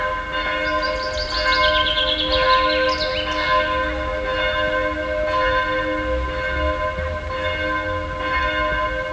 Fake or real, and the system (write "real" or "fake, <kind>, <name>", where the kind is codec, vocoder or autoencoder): real